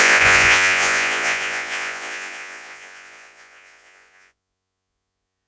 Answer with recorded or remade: remade